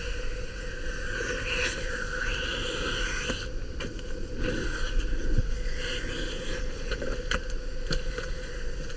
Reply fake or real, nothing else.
real